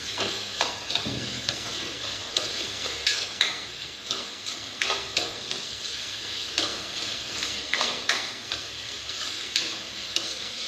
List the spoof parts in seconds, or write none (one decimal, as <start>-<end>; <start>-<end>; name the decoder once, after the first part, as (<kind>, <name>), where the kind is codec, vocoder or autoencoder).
0.0-10.7 (codec, SNAC)